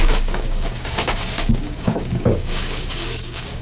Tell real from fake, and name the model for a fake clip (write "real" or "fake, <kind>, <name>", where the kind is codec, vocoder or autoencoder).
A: fake, codec, DAC